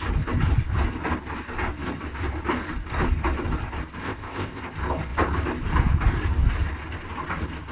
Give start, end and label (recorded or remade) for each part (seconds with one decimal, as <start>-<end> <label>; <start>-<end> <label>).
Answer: 0.0-4.0 recorded; 4.0-4.6 remade; 4.6-7.7 recorded